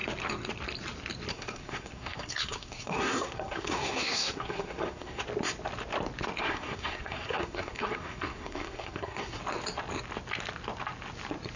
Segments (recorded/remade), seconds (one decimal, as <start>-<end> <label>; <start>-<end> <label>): 0.0-1.3 recorded; 1.3-5.2 remade; 5.2-6.4 recorded; 6.4-9.4 remade; 9.4-11.6 recorded